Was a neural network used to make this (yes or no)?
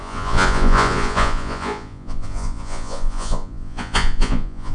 yes